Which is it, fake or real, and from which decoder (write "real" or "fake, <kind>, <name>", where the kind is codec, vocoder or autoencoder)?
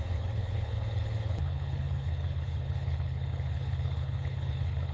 fake, codec, HILCodec